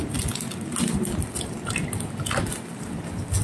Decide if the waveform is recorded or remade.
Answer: recorded